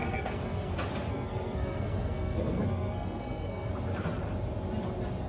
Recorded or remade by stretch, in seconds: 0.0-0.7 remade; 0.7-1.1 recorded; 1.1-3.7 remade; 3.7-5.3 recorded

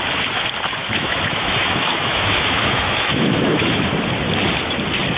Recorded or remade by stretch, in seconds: 0.0-0.8 recorded; 0.8-3.9 remade; 3.9-5.2 recorded

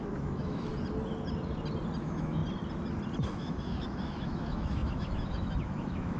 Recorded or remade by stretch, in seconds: 0.0-0.7 remade; 0.7-2.0 recorded; 2.0-2.4 remade; 2.4-3.3 recorded; 3.3-6.2 remade

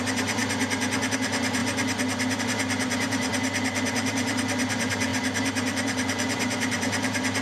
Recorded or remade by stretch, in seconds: 0.0-0.4 remade; 0.4-1.1 recorded; 1.1-1.6 remade; 1.6-2.4 recorded; 2.4-3.3 remade; 3.3-3.9 recorded; 3.9-7.4 remade

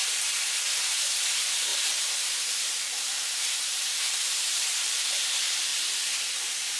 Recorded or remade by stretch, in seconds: 0.0-1.0 recorded; 1.0-6.8 remade

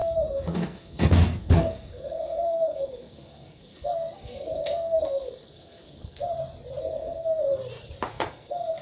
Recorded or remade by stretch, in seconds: 0.0-6.2 remade; 6.2-6.8 recorded; 6.8-7.5 remade; 7.5-8.1 recorded; 8.1-8.8 remade

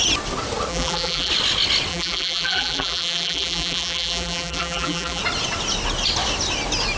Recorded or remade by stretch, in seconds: 0.0-0.7 recorded; 0.7-1.3 remade; 1.3-1.9 recorded; 1.9-5.2 remade; 5.2-7.0 recorded

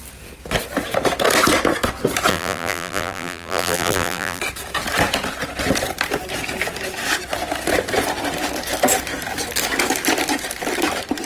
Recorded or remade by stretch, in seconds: 0.0-2.3 recorded; 2.3-4.4 remade; 4.4-11.3 recorded